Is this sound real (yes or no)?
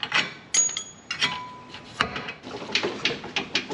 yes